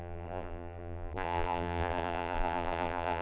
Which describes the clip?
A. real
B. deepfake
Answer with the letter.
B